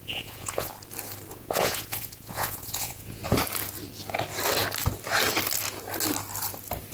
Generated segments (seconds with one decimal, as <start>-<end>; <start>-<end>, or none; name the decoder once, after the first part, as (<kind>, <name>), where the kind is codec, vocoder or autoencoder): 0.0-0.7 (vocoder, Vocos); 1.3-3.2

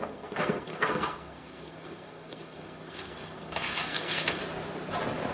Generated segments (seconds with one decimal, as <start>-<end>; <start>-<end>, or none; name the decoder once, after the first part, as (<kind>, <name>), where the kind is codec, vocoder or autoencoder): 0.0-4.4 (codec, SNAC)

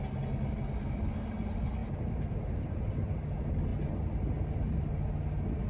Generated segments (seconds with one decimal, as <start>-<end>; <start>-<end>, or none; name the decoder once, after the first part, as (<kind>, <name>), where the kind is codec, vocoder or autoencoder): 1.8-3.2 (vocoder, BigVGAN v2)

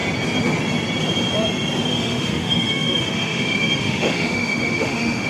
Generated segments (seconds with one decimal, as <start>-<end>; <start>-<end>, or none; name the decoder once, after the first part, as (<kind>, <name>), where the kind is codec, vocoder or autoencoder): 1.9-5.3 (autoencoder, DAC-VAE)

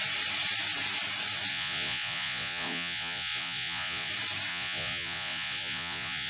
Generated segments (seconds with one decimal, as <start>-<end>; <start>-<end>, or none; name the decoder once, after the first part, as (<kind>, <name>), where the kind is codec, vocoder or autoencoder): 1.5-4.1 (vocoder, Vocos); 4.5-6.3

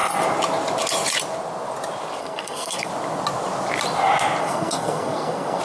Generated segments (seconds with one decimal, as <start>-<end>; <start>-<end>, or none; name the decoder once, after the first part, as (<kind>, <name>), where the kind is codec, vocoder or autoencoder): 2.2-2.9 (codec, SNAC); 4.4-5.6

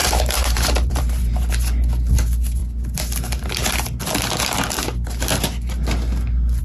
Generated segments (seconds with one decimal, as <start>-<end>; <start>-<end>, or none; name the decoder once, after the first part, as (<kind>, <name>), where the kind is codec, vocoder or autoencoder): 0.0-1.5 (vocoder, BigVGAN v2)